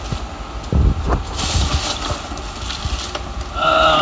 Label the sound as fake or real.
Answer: real